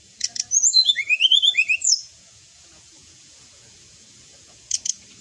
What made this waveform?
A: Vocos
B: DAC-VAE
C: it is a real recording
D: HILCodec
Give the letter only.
A